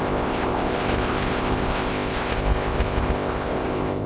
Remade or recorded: remade